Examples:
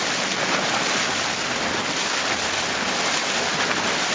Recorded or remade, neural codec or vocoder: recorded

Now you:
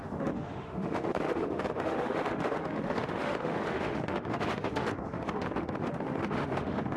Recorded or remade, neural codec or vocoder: remade, autoencoder, DAC-VAE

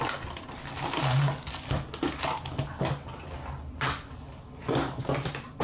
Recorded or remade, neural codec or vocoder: recorded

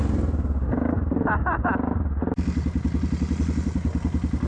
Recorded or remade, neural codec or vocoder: recorded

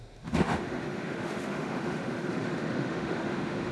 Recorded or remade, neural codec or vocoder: remade, autoencoder, DAC-VAE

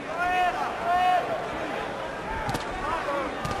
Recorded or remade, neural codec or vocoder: recorded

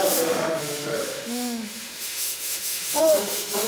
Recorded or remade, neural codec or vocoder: remade, autoencoder, DAC-VAE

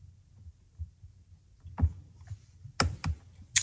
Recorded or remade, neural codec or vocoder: recorded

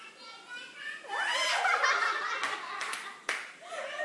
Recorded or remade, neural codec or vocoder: recorded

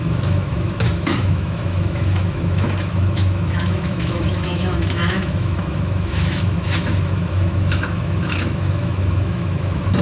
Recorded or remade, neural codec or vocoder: remade, autoencoder, DAC-VAE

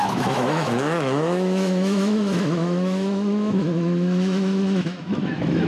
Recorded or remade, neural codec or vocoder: remade, autoencoder, DAC-VAE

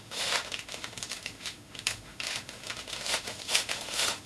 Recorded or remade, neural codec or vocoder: remade, autoencoder, DAC-VAE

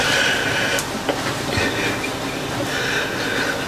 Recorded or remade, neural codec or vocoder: recorded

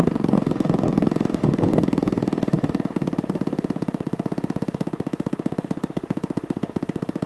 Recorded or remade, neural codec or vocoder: remade, autoencoder, DAC-VAE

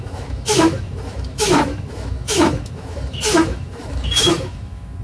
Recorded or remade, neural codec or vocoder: remade, autoencoder, DAC-VAE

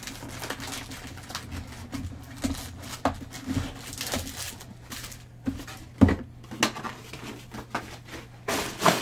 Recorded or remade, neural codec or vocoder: recorded